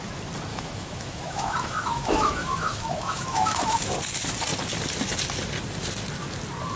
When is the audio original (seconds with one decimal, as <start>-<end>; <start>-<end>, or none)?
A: 0.0-0.5; 3.8-6.8